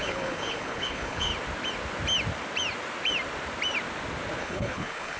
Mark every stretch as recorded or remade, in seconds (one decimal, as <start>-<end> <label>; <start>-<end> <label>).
0.0-1.3 remade; 1.3-4.4 recorded; 4.4-5.2 remade